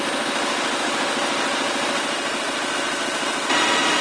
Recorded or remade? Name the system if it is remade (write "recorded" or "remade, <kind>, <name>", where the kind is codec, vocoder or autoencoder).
recorded